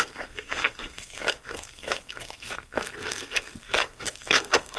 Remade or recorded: remade